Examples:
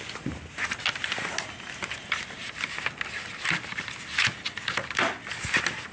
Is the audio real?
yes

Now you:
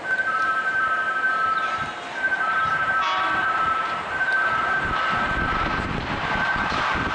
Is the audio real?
no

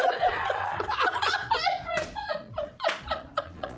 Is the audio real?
no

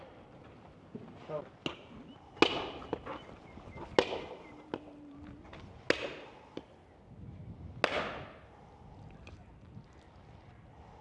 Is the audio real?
yes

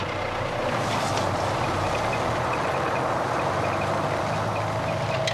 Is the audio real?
yes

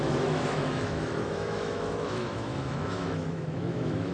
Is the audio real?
no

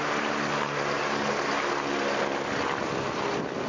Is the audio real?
yes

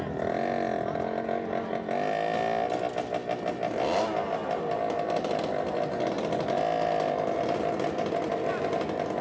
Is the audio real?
yes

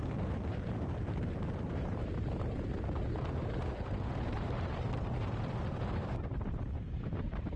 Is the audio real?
no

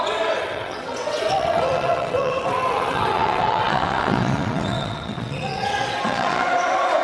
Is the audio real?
no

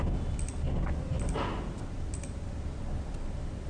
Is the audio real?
yes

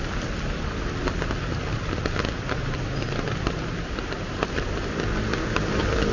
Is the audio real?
yes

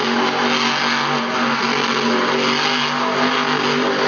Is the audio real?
yes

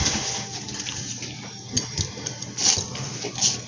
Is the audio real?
yes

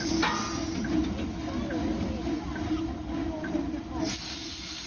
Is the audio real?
yes